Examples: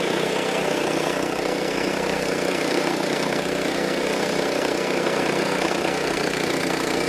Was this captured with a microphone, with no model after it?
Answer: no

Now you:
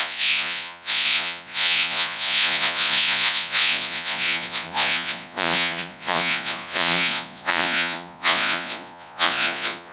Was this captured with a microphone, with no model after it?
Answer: no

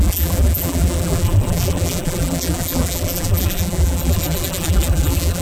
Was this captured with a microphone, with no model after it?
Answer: no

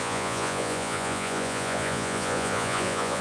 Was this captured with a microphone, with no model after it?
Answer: no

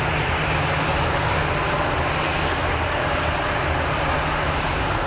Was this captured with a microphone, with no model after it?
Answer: yes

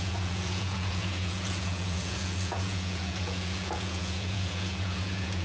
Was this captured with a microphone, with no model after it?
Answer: no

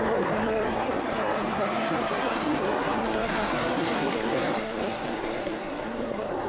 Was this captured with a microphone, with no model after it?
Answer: no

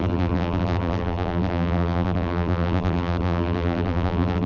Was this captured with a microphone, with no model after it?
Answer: no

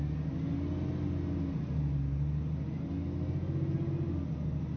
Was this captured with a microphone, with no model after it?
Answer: yes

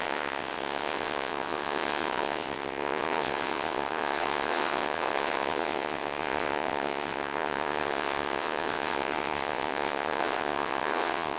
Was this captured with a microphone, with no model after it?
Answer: no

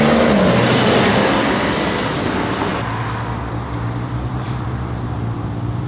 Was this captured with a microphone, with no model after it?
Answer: yes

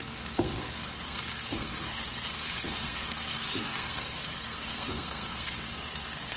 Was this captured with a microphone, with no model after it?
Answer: no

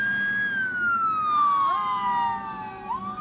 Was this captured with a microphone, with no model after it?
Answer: yes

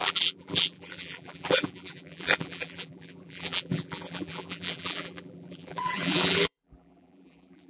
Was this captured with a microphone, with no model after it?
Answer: no